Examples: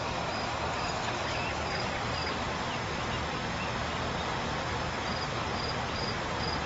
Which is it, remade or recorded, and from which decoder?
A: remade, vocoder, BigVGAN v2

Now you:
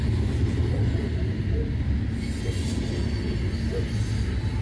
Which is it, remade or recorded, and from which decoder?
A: recorded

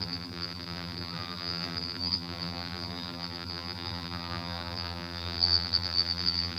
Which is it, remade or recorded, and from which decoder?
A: remade, vocoder, BigVGAN v2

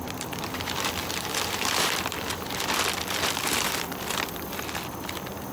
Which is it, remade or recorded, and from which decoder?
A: remade, vocoder, BigVGAN v2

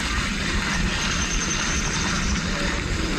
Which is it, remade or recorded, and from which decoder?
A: recorded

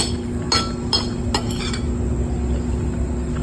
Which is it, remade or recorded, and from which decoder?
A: recorded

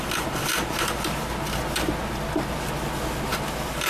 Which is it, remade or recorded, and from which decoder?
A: recorded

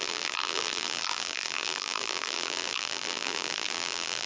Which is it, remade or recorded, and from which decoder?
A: remade, vocoder, BigVGAN v2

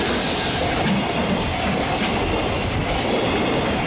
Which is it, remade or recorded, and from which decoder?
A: recorded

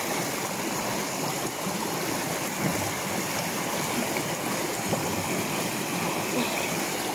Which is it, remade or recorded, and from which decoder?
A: remade, vocoder, BigVGAN v2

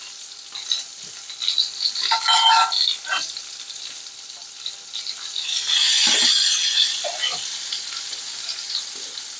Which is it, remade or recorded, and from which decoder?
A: recorded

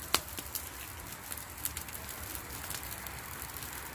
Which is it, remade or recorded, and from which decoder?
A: recorded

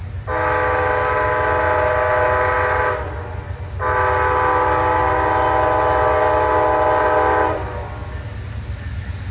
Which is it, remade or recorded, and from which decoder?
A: recorded